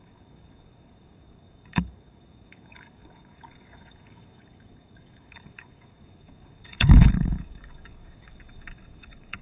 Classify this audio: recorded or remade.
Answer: remade